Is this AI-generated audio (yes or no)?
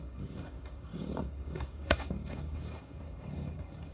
yes